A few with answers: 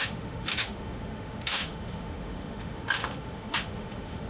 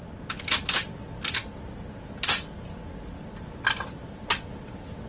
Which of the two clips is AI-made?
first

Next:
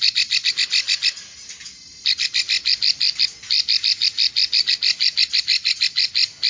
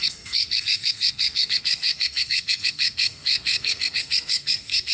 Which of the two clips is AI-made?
second